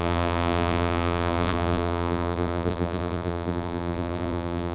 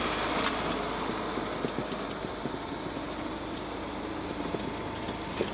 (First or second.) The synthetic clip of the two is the first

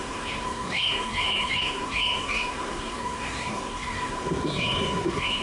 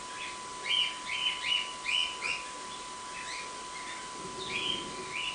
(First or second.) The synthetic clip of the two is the first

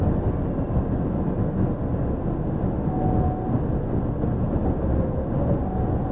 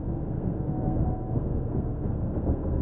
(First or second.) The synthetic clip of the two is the second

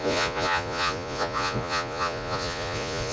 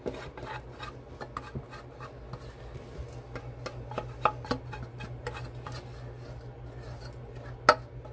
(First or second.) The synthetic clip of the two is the first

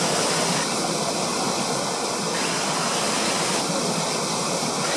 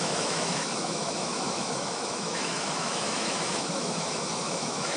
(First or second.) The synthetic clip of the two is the second